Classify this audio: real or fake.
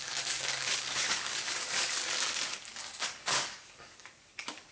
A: fake